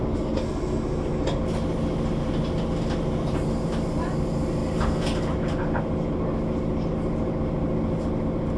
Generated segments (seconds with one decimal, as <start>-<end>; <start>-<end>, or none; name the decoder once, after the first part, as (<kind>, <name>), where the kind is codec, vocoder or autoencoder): none